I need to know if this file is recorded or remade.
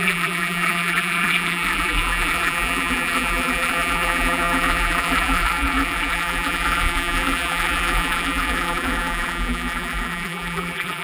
remade